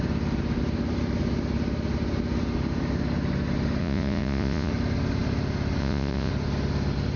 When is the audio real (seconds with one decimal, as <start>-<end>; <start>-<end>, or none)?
0.0-3.8; 4.7-5.8; 6.3-7.2

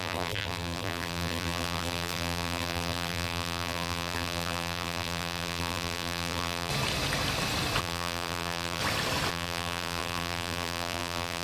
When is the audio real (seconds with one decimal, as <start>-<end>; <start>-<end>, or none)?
6.7-7.8; 8.8-9.3

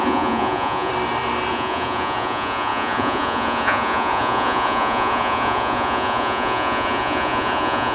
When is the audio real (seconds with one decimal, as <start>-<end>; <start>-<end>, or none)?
0.9-1.5

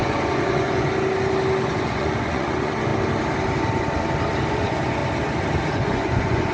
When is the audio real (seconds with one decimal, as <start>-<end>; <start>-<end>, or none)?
0.9-1.7; 2.9-4.5; 5.0-5.6

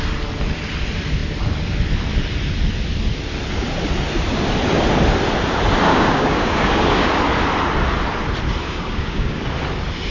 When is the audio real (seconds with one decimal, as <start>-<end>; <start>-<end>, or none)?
0.0-5.9; 7.1-8.6; 9.4-10.1